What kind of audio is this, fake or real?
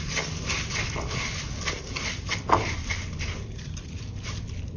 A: real